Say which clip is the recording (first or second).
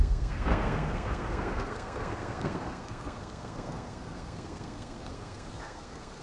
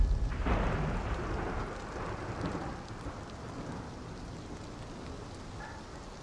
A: second